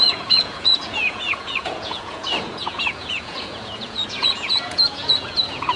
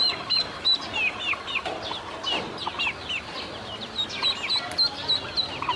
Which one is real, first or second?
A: second